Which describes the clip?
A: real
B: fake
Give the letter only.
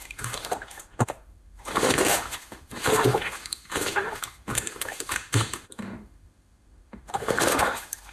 B